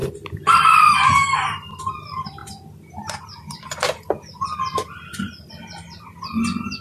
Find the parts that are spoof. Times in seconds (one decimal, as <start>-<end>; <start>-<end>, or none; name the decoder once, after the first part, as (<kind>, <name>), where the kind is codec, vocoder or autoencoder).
0.0-6.8 (vocoder, BigVGAN v2)